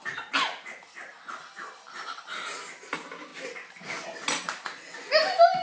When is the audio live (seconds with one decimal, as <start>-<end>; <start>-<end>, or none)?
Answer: 0.0-5.6